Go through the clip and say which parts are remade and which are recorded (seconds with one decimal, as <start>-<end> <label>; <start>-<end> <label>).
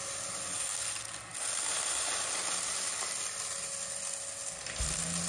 0.0-5.3 recorded